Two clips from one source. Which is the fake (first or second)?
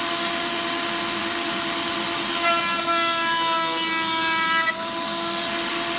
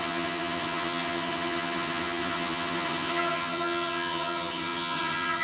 second